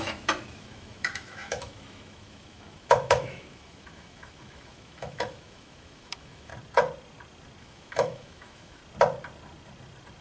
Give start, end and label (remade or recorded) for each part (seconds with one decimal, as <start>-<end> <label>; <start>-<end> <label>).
0.0-6.5 remade; 6.5-7.6 recorded; 7.6-8.8 remade; 8.8-10.2 recorded

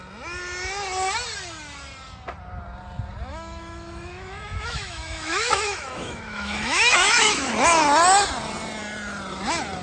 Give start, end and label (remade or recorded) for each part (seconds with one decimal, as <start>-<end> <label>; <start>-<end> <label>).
0.0-3.3 recorded; 3.3-7.5 remade; 7.5-9.8 recorded

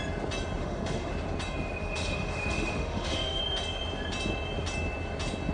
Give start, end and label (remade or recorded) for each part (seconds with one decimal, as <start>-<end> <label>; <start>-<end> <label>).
0.0-0.6 recorded; 0.6-1.1 remade; 1.1-1.8 recorded; 1.8-3.4 remade; 3.4-5.5 recorded

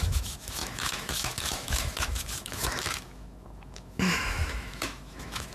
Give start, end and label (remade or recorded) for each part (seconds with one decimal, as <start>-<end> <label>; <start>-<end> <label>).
0.0-5.5 remade

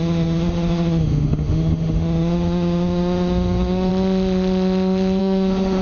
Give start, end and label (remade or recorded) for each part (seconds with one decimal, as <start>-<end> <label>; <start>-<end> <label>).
0.0-3.9 remade; 3.9-5.2 recorded; 5.2-5.8 remade

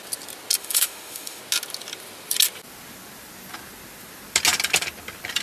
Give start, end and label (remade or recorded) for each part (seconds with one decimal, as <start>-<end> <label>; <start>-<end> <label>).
0.0-0.6 recorded; 0.6-1.4 remade; 1.4-5.4 recorded